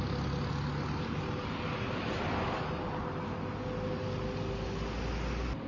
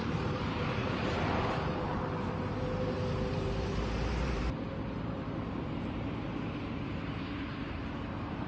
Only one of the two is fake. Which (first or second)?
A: second